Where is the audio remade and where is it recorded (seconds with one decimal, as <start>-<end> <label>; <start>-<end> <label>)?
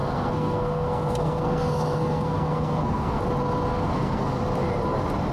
0.0-3.2 remade; 3.2-3.7 recorded; 3.7-4.4 remade; 4.4-5.3 recorded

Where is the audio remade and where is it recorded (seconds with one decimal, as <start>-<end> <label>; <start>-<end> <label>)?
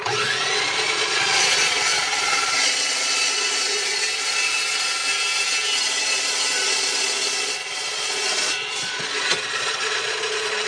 0.0-5.0 remade; 5.0-5.8 recorded; 5.8-10.7 remade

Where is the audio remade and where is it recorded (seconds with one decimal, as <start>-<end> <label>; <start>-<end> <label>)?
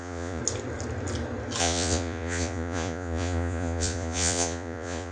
0.0-0.4 remade; 0.4-1.6 recorded; 1.6-5.1 remade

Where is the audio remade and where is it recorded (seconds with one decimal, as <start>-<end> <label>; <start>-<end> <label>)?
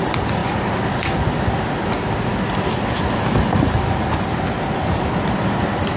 0.0-6.0 recorded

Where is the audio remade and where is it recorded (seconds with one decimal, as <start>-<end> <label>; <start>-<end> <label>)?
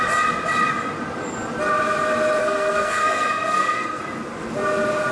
0.0-2.4 recorded; 2.4-4.0 remade; 4.0-5.1 recorded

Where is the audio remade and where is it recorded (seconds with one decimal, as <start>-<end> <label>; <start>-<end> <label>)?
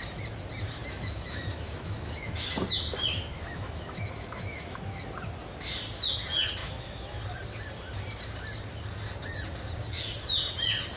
0.0-0.8 recorded; 0.8-2.5 remade; 2.5-3.1 recorded; 3.1-5.0 remade; 5.0-6.6 recorded; 6.6-7.2 remade; 7.2-11.0 recorded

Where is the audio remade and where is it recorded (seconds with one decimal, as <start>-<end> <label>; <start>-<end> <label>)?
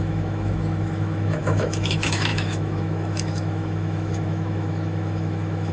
0.0-5.7 remade